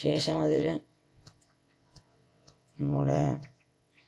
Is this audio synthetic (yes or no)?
yes